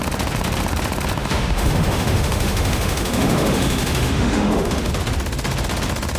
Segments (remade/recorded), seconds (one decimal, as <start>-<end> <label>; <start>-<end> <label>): 0.0-1.2 recorded; 1.2-4.9 remade; 4.9-6.2 recorded